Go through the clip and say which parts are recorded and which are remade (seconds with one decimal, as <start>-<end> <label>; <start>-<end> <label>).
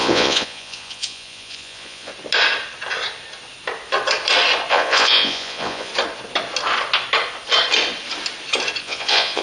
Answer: 0.0-2.1 remade; 2.1-4.7 recorded; 4.7-5.9 remade; 5.9-8.8 recorded; 8.8-9.4 remade